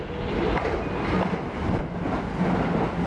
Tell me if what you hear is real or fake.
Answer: real